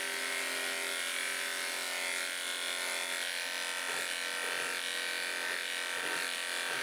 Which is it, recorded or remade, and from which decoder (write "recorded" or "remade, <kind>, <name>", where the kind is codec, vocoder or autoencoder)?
recorded